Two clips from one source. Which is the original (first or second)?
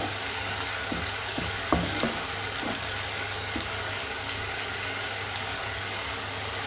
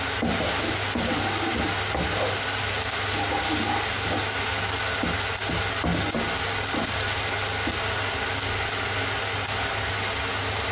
second